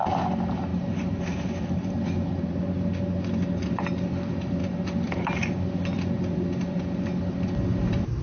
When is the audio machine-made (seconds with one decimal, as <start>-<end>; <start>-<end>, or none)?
0.7-2.6